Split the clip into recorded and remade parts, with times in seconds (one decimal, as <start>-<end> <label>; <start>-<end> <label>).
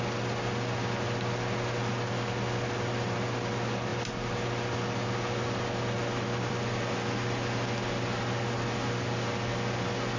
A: 0.0-10.2 recorded